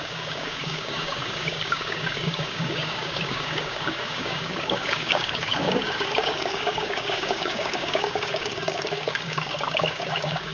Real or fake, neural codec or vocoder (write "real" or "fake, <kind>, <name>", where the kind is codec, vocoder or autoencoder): fake, codec, DAC